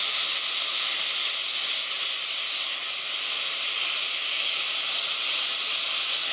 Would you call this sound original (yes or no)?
yes